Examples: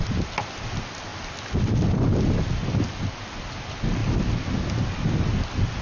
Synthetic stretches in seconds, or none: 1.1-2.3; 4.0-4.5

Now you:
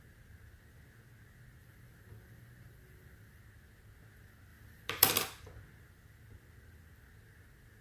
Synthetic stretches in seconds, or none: 1.6-3.4; 4.5-5.1

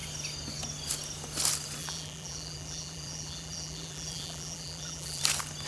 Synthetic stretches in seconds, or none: 1.8-5.2

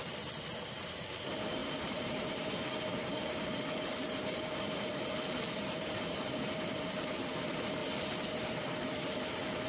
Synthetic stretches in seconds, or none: 0.0-7.8; 8.4-9.7

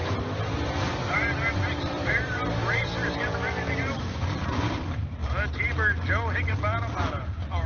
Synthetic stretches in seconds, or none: 0.0-5.2; 7.0-7.7